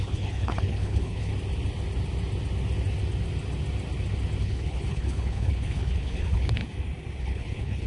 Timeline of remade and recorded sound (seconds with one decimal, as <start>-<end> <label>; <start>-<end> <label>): 0.0-1.3 remade; 1.3-4.4 recorded; 4.4-6.6 remade; 6.6-7.2 recorded; 7.2-7.9 remade